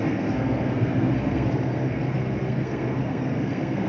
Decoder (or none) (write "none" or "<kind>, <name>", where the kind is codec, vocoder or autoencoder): codec, SNAC